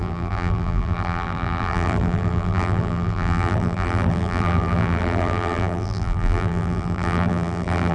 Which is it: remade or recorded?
remade